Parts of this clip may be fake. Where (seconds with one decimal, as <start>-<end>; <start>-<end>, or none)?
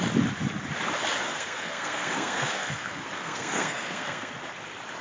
1.3-4.3